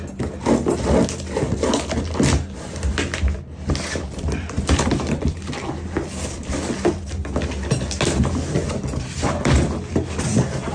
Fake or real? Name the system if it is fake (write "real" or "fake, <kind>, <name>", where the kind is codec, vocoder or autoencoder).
real